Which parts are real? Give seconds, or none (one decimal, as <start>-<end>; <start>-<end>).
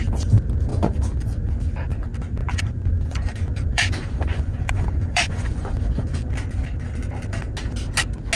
0.0-0.7; 1.5-2.4; 6.3-8.4